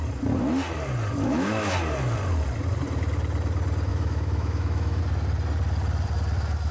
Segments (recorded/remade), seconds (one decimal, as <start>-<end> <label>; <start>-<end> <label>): 0.0-1.2 recorded; 1.2-1.7 remade; 1.7-3.9 recorded; 3.9-5.0 remade; 5.0-6.7 recorded